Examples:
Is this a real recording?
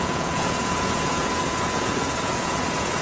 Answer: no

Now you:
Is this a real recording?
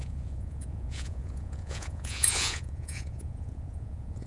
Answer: no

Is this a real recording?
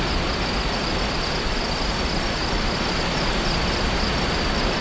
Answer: yes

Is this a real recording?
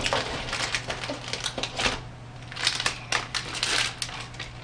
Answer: yes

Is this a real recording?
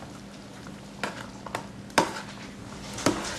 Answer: yes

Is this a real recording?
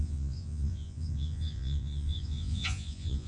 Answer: no